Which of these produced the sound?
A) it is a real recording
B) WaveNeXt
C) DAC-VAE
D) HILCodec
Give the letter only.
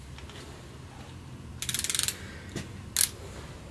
A